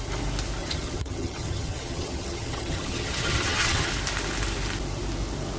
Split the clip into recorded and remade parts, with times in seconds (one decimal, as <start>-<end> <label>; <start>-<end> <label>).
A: 0.0-0.6 recorded; 0.6-3.9 remade; 3.9-5.6 recorded